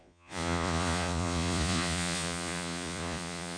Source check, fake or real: fake